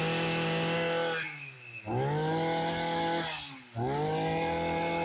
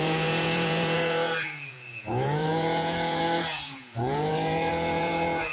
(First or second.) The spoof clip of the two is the second